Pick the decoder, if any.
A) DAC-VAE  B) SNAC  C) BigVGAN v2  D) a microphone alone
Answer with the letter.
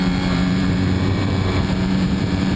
C